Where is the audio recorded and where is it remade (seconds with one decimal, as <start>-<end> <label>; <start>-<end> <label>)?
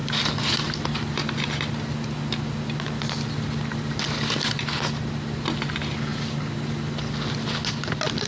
0.0-8.3 recorded